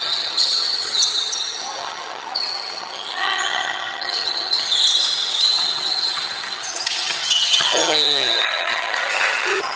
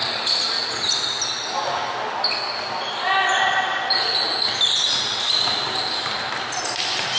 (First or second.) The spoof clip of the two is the first